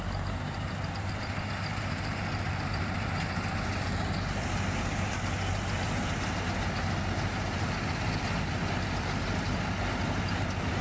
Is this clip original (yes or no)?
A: yes